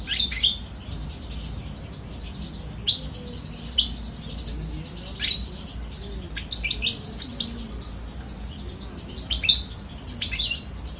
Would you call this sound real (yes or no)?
yes